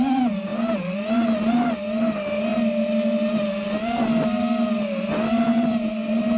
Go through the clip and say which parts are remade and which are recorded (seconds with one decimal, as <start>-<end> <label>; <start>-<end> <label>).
0.0-6.4 recorded